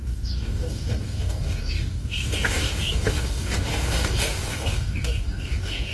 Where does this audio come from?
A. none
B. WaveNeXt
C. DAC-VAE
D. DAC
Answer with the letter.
D